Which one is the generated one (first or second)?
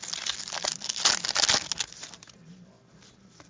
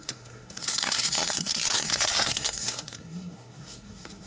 second